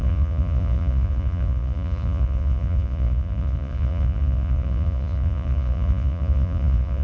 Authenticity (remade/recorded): remade